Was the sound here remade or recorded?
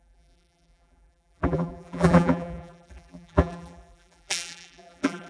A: remade